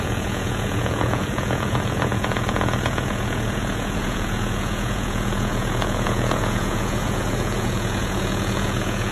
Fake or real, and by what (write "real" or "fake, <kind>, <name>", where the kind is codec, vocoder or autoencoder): fake, vocoder, Vocos